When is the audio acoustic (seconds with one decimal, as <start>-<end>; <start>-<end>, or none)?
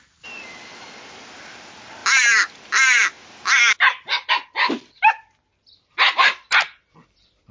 0.0-2.0; 4.3-7.5